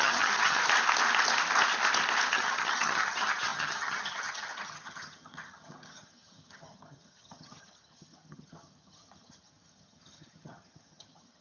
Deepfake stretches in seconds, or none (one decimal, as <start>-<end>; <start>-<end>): 0.0-0.6; 2.3-11.4